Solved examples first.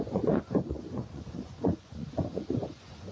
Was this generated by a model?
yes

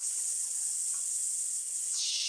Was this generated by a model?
yes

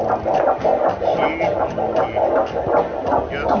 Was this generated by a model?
no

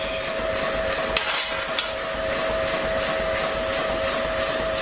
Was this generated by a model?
no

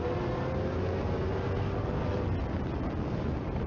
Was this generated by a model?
no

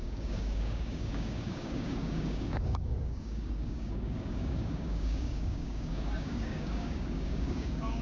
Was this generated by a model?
yes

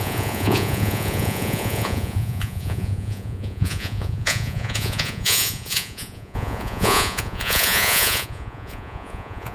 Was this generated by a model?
yes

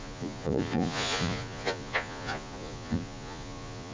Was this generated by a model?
yes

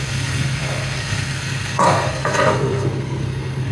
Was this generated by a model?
yes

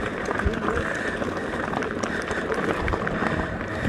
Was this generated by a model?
no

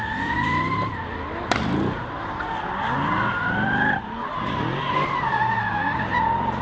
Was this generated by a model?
no